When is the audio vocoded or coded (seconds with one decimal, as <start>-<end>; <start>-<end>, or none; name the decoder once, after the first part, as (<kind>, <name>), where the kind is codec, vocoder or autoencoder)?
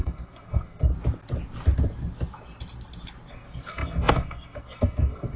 0.0-0.9 (codec, SNAC); 3.3-5.4